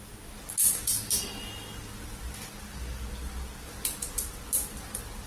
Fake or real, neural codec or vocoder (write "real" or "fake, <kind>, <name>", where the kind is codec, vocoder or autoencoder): real